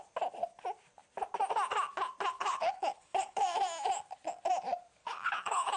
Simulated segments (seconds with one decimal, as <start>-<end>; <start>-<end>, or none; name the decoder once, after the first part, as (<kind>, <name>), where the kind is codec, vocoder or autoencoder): 2.4-3.4 (codec, HILCodec); 5.0-5.8